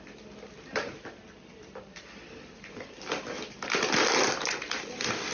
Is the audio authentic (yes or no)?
yes